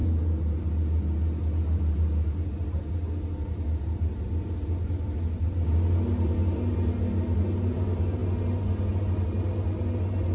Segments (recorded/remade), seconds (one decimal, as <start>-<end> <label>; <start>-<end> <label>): 0.0-10.3 recorded